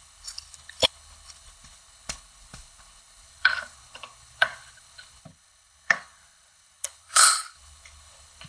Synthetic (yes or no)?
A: yes